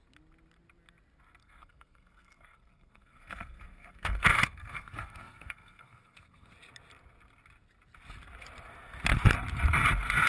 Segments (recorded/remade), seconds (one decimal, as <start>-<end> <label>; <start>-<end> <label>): 0.0-1.4 recorded; 1.4-6.5 remade; 6.5-10.3 recorded